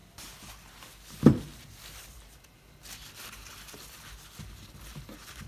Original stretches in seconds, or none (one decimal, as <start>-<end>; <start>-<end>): 0.5-5.5